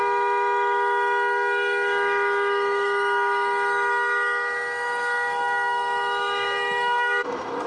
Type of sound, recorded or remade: remade